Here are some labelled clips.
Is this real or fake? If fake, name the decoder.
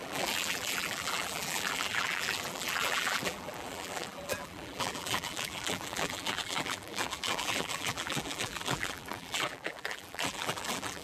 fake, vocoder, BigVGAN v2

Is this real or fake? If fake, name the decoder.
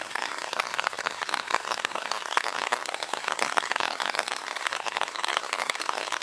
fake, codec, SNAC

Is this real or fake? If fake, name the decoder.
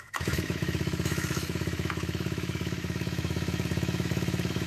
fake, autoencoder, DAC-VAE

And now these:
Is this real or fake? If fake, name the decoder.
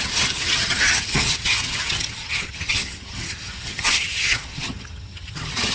fake, vocoder, HiFi-GAN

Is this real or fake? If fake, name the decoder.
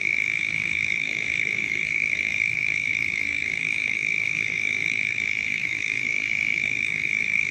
fake, codec, SNAC